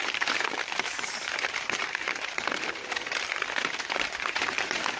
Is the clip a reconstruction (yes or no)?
yes